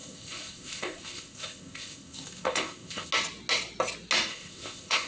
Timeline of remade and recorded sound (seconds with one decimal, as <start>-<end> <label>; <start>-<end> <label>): 0.0-3.1 remade; 3.1-4.3 recorded; 4.3-5.1 remade